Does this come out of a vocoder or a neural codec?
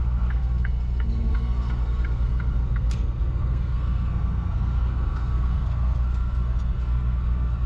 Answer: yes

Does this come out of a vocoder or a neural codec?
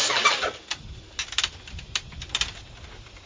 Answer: no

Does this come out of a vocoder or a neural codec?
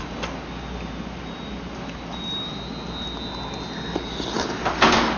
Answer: no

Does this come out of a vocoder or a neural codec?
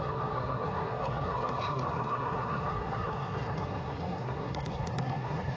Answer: yes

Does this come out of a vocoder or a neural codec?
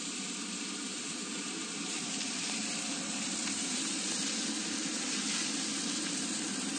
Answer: yes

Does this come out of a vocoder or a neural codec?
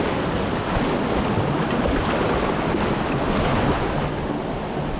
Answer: no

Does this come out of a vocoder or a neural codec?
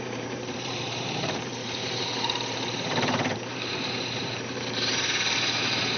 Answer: yes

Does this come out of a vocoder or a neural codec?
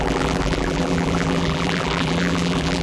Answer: yes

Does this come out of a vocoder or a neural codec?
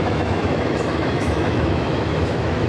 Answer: yes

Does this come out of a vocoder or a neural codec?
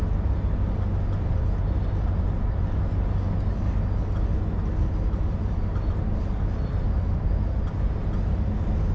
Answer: no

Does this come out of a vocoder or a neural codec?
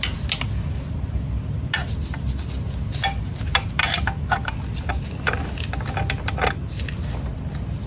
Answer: no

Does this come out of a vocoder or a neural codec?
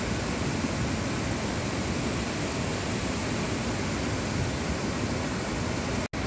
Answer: no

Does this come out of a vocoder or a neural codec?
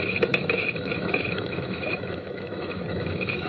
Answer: yes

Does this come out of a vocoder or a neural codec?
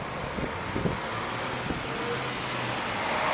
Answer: no